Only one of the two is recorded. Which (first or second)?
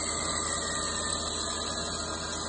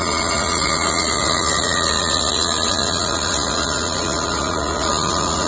first